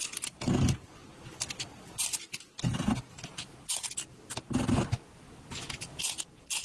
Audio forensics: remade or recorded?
recorded